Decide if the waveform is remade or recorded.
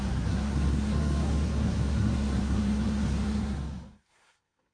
remade